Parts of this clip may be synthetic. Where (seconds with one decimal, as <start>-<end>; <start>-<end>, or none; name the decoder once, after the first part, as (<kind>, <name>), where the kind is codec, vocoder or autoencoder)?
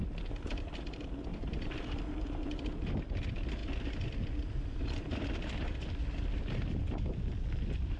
1.3-2.0 (vocoder, BigVGAN v2)